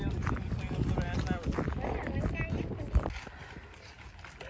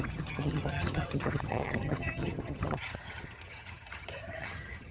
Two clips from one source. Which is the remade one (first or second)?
second